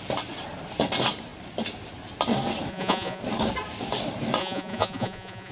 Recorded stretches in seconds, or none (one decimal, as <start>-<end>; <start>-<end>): 0.0-2.7; 3.2-4.4